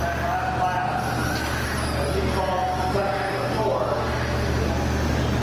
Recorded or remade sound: recorded